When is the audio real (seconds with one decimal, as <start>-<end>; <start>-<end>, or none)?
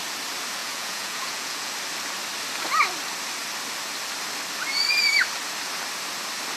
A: 0.0-0.6; 1.7-6.6